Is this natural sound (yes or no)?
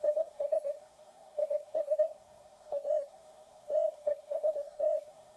no